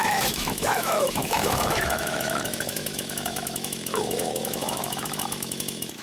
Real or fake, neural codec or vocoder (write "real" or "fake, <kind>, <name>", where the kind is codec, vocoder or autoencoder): fake, autoencoder, DAC-VAE